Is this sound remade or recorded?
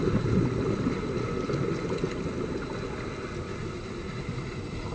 recorded